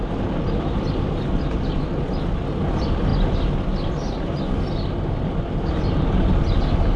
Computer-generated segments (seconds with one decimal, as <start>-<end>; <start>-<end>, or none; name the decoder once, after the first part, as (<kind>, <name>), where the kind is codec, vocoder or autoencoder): none